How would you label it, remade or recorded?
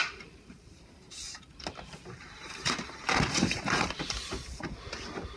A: remade